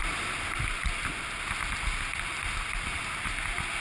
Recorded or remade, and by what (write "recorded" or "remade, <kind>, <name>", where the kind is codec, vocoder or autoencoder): recorded